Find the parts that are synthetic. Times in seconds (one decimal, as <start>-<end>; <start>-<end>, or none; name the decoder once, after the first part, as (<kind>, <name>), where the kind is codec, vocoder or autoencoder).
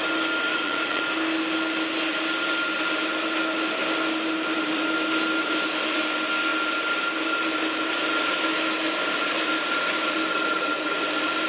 0.5-1.0 (vocoder, Vocos)